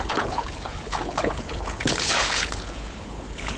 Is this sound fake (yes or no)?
yes